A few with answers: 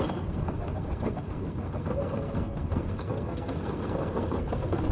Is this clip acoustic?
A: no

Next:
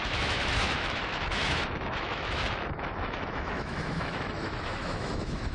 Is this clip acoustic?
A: no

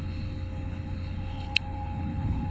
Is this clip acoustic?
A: no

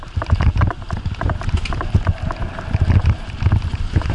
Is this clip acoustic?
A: yes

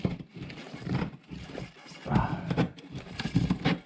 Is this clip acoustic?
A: yes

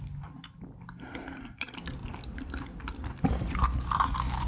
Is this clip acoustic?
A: yes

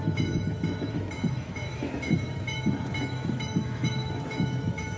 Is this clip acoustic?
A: no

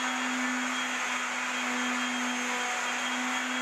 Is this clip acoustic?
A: yes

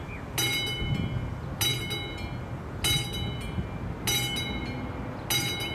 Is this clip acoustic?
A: yes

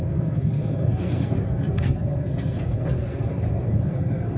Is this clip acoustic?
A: no